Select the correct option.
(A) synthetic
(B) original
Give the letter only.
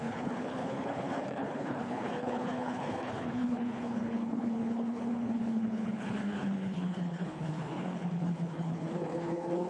A